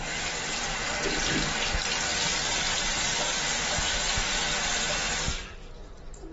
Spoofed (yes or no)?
no